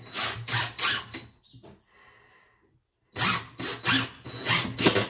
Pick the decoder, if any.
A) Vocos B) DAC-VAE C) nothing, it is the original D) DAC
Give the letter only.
C